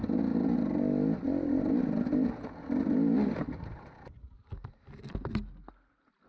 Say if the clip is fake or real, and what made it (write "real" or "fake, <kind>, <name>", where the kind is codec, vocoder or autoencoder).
real